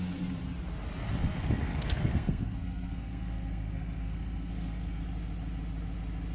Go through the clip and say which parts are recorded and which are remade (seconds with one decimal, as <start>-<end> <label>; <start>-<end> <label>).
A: 0.0-1.2 recorded; 1.2-5.0 remade; 5.0-6.3 recorded